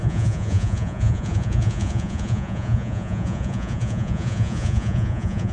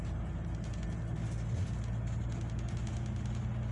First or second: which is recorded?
second